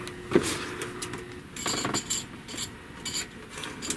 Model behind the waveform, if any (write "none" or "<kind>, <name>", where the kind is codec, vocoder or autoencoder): none